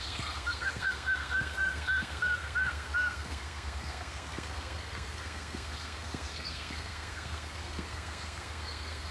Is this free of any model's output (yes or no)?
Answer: no